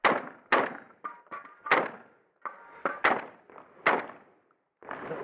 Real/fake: real